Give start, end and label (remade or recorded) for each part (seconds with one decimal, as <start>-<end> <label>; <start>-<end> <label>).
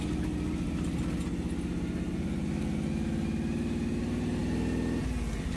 0.0-5.6 recorded